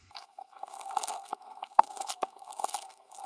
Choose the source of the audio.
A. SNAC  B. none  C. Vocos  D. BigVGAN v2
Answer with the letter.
A